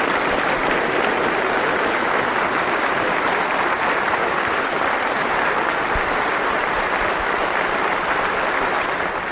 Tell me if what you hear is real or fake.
real